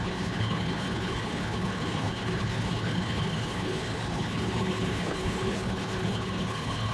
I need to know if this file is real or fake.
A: fake